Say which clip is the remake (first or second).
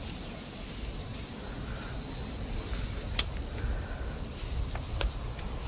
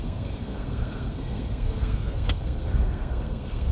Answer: second